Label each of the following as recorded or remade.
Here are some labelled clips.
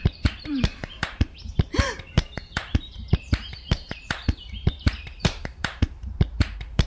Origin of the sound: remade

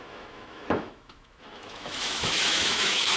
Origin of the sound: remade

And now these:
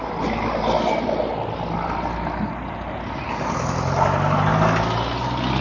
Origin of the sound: recorded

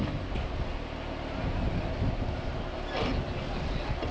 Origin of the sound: recorded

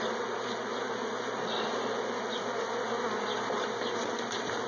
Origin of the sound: recorded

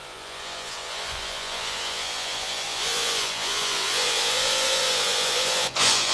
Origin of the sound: remade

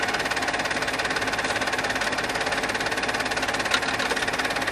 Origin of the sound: recorded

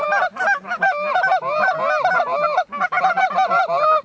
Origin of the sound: recorded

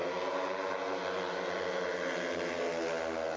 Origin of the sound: recorded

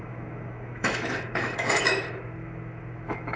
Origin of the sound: remade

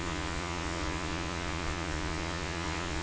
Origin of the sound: remade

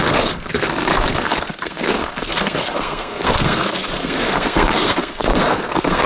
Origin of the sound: remade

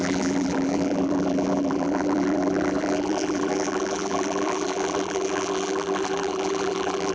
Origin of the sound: remade